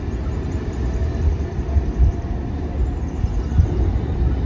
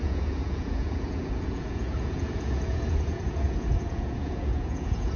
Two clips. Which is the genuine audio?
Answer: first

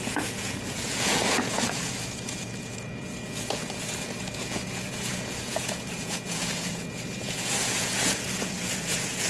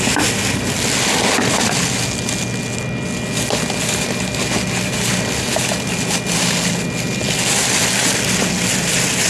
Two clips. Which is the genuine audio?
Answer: second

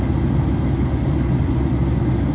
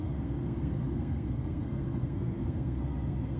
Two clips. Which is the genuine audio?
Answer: first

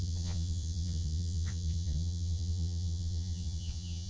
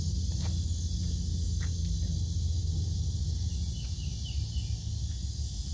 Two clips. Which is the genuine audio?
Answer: second